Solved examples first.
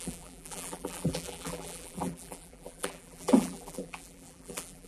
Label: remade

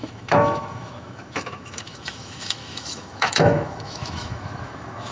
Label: remade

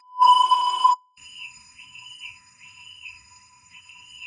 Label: remade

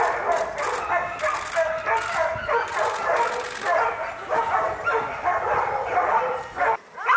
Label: recorded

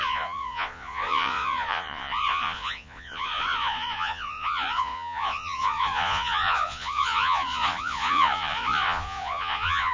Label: remade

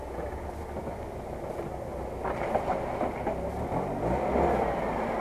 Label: recorded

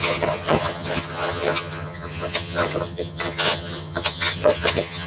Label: remade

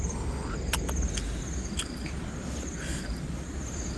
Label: recorded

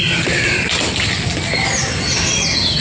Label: recorded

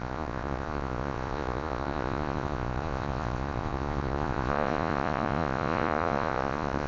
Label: remade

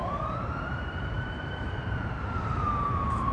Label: remade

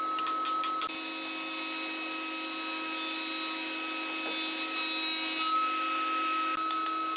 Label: recorded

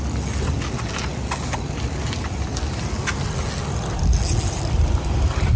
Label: recorded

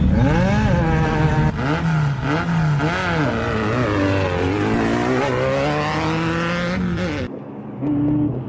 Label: recorded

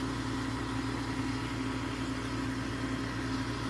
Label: recorded